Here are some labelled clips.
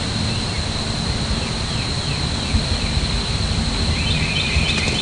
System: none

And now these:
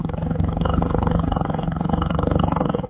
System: codec, DAC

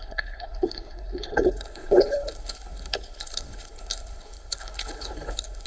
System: codec, HILCodec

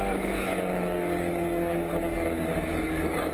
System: codec, DAC